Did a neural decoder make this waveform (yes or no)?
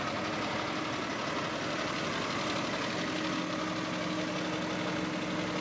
no